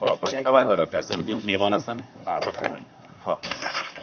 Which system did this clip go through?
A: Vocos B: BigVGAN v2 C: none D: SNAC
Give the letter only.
D